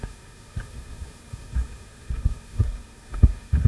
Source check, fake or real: fake